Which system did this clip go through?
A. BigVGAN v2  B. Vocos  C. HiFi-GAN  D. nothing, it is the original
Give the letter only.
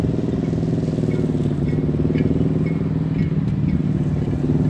D